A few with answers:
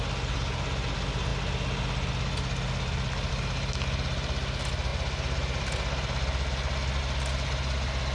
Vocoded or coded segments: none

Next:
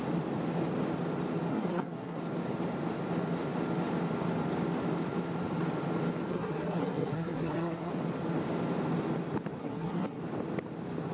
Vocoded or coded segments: 1.5-2.2; 6.3-7.9; 9.6-10.2

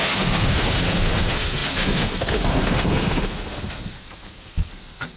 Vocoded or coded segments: 0.0-5.2

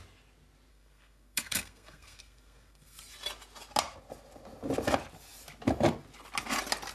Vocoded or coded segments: 0.7-3.0

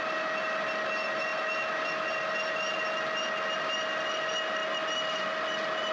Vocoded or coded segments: none

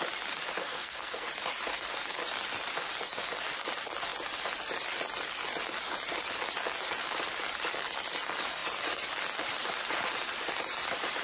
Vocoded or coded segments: 0.6-1.3